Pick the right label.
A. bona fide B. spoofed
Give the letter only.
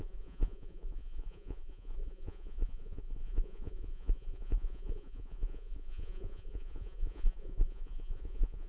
B